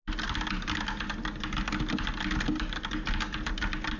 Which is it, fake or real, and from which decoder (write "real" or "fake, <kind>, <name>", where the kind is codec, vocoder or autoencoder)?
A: real